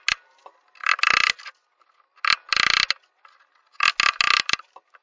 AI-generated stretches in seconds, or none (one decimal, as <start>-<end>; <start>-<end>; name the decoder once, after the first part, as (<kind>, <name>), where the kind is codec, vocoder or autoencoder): none